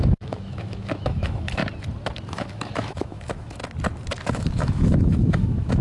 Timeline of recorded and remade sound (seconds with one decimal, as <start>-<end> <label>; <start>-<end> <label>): 0.0-1.6 remade; 1.6-2.3 recorded; 2.3-3.6 remade; 3.6-4.3 recorded; 4.3-5.8 remade